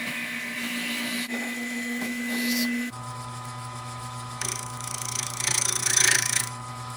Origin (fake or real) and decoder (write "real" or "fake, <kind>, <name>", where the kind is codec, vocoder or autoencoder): fake, autoencoder, DAC-VAE